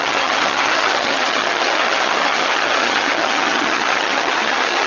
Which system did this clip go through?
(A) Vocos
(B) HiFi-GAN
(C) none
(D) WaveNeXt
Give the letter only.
B